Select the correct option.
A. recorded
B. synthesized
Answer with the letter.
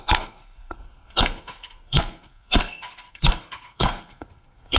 B